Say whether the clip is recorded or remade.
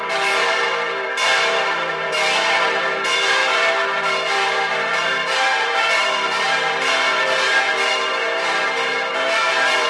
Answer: remade